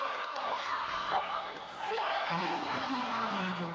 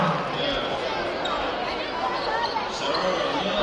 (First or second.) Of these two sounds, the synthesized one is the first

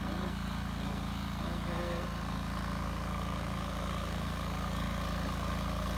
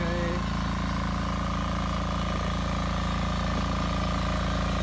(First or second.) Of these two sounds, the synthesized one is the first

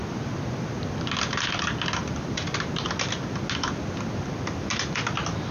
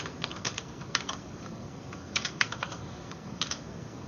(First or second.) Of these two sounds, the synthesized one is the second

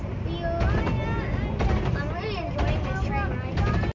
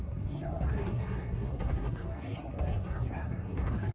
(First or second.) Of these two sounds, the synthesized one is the second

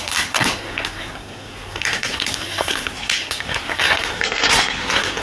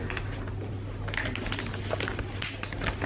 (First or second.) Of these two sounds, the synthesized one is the first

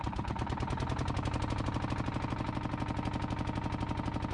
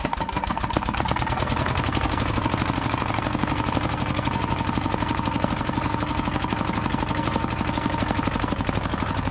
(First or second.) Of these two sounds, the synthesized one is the second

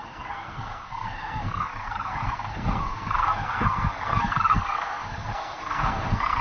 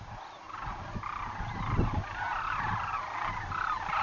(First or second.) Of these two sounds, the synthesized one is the first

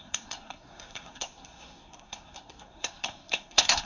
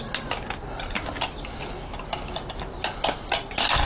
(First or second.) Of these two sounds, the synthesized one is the first